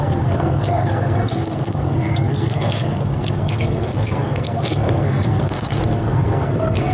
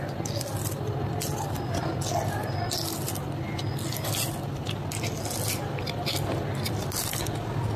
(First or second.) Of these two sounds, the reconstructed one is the first